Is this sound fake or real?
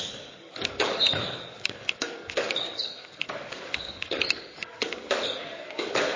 fake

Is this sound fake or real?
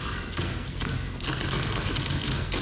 fake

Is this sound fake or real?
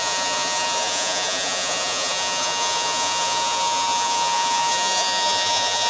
fake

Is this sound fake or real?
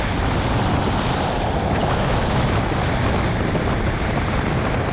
real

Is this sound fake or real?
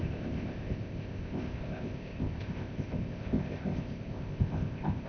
fake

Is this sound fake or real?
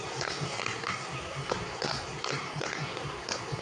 fake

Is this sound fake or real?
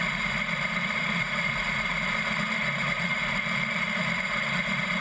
fake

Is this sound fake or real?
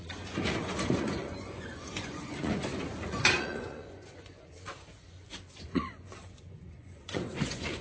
fake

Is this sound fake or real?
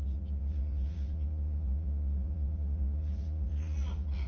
fake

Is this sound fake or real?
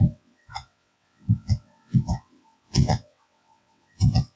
fake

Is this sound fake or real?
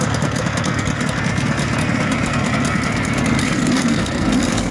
fake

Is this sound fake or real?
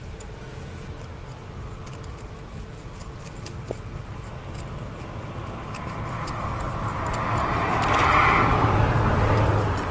real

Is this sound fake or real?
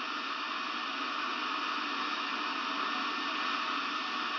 real